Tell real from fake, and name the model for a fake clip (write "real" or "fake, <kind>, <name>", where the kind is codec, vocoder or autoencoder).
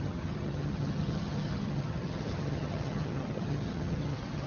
fake, vocoder, HiFi-GAN